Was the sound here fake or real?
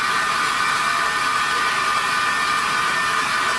real